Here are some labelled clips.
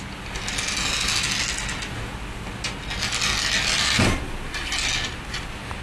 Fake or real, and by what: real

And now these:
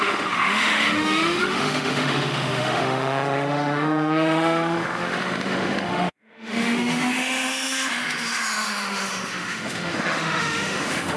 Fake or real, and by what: fake, autoencoder, DAC-VAE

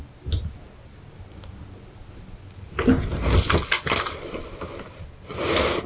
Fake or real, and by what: real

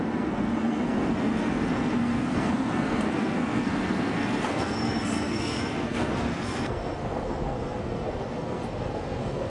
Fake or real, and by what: fake, codec, SNAC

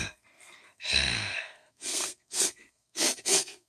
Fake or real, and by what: fake, codec, SNAC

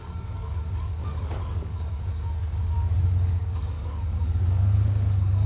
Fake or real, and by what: fake, codec, DAC